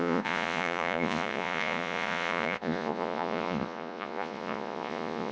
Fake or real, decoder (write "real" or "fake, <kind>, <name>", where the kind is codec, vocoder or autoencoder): fake, vocoder, Vocos